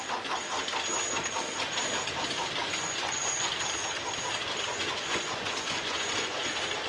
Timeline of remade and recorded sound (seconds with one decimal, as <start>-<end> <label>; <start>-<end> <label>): 0.0-2.6 recorded; 2.6-3.5 remade; 3.5-4.7 recorded; 4.7-6.5 remade; 6.5-6.9 recorded